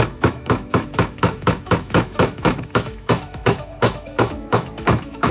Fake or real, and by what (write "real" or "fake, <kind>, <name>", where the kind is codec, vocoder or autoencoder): fake, autoencoder, DAC-VAE